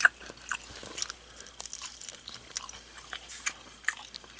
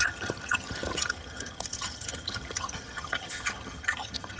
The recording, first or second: first